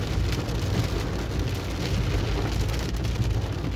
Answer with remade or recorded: recorded